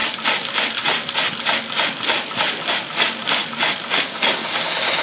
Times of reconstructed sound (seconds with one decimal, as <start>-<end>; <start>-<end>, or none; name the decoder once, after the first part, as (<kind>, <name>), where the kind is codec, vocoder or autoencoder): none